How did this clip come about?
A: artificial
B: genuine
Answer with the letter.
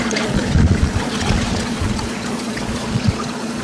A